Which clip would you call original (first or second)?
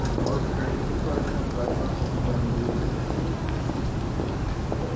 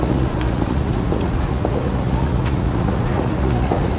first